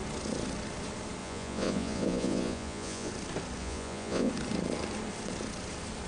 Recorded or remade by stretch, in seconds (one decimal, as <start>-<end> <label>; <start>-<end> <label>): 0.0-1.2 recorded; 1.2-3.1 remade; 3.1-3.6 recorded; 3.6-4.3 remade; 4.3-6.1 recorded